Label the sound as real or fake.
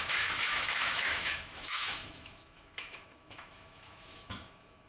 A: fake